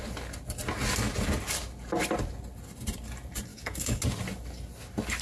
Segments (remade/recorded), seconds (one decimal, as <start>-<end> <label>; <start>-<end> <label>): 0.0-3.5 recorded; 3.5-4.0 remade; 4.0-5.2 recorded